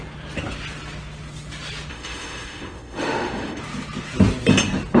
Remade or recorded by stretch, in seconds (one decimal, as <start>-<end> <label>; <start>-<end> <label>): 0.0-1.9 recorded; 1.9-3.6 remade; 3.6-5.0 recorded